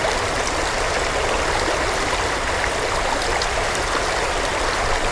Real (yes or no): yes